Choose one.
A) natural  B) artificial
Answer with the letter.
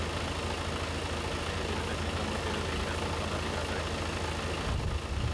A